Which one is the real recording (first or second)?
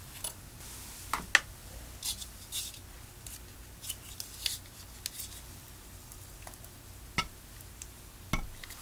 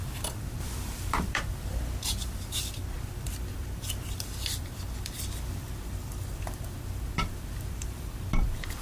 first